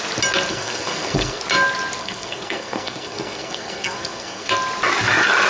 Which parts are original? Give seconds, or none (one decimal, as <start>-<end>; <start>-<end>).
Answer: 0.0-0.5; 1.4-2.0; 4.5-5.5